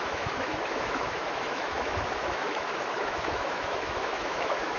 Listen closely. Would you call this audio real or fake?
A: fake